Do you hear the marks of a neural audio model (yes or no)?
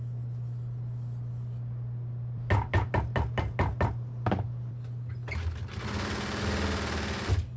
no